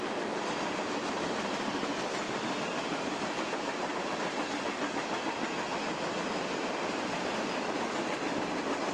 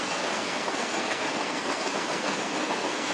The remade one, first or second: second